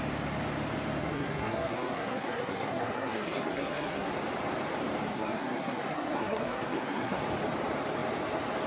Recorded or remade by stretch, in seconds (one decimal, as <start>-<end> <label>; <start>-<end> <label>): 0.0-1.0 recorded; 1.0-4.1 remade; 4.1-5.1 recorded; 5.1-7.2 remade; 7.2-8.7 recorded